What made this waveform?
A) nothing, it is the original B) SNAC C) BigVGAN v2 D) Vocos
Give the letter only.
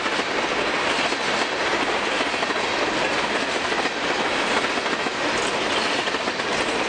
A